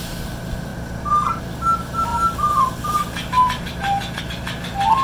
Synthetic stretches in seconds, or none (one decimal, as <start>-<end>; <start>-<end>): none